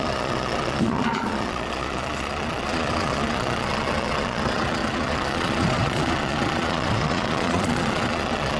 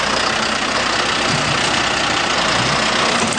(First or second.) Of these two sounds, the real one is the second